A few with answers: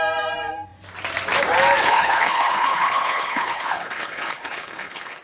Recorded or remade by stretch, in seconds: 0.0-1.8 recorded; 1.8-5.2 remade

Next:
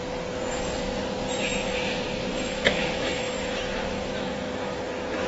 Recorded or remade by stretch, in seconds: 0.0-2.3 recorded; 2.3-3.3 remade; 3.3-3.9 recorded; 3.9-4.8 remade; 4.8-5.3 recorded

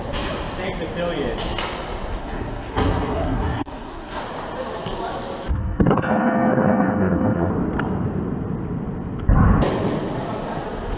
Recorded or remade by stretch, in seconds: 0.0-2.2 recorded; 2.2-4.2 remade; 4.2-5.5 recorded; 5.5-7.5 remade; 7.5-11.0 recorded

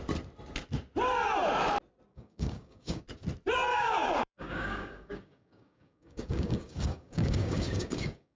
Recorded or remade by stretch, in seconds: 0.0-2.1 recorded; 2.1-3.0 remade; 3.0-3.7 recorded; 3.7-8.4 remade

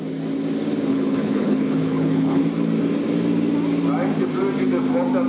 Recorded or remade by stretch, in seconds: 0.0-0.9 recorded; 0.9-2.4 remade; 2.4-5.3 recorded